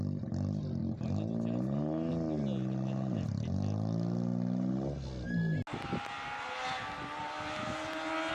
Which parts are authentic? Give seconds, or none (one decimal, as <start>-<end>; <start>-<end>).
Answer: 0.0-8.3